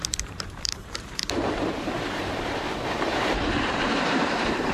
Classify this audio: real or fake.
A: fake